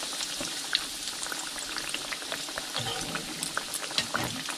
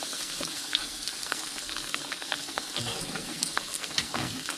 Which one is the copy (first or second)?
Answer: second